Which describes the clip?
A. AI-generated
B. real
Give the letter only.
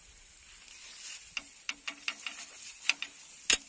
B